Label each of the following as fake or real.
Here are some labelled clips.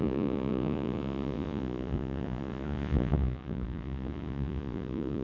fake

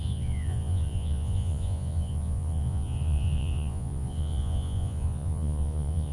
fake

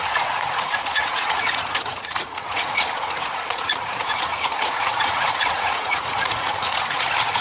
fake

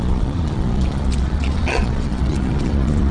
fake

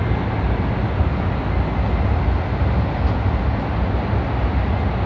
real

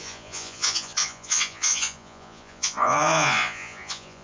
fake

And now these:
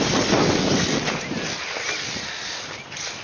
real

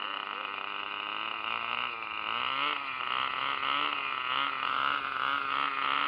real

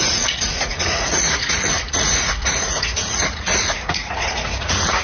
fake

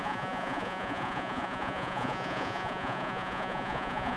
fake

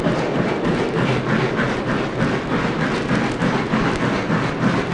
real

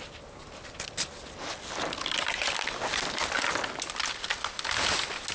real